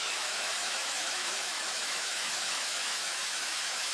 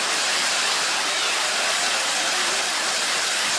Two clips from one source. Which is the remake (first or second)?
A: first